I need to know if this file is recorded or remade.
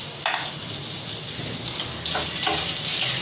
recorded